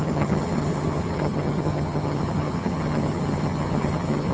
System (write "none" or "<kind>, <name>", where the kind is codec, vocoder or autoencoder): vocoder, HiFi-GAN